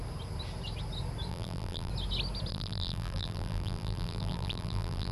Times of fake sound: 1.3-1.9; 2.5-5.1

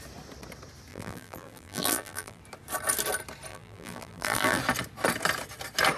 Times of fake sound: 0.9-2.4; 3.5-4.6

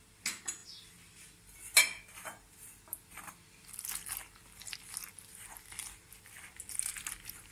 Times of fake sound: none

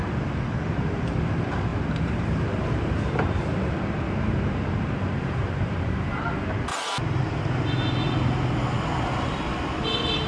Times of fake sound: 1.7-6.3